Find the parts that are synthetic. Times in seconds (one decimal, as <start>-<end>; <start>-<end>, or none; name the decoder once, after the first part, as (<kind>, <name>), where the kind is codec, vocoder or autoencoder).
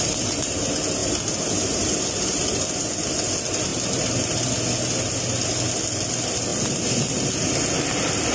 none